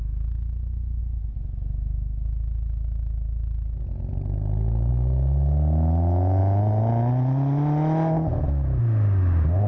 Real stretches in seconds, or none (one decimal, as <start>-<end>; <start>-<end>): 0.0-9.7